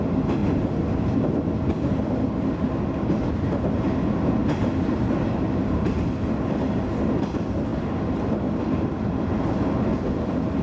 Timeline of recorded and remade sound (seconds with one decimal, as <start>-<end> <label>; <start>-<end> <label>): 0.0-0.4 recorded; 0.4-1.4 remade; 1.4-4.4 recorded; 4.4-5.8 remade; 5.8-10.6 recorded